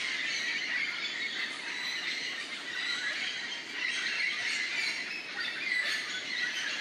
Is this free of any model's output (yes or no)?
yes